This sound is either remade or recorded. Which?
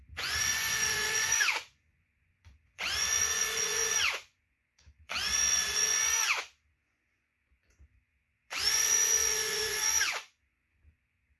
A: remade